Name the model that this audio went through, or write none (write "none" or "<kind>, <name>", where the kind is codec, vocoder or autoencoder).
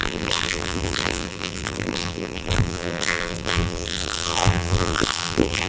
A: vocoder, BigVGAN v2